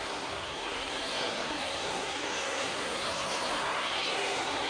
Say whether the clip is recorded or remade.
remade